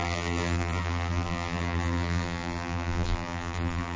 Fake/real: fake